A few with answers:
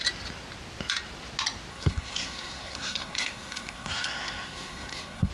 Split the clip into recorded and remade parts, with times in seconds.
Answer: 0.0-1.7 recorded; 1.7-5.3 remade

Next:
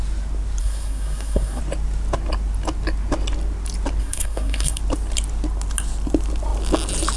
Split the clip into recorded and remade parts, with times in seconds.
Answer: 0.0-0.6 recorded; 0.6-1.6 remade; 1.6-4.0 recorded; 4.0-4.8 remade; 4.8-7.2 recorded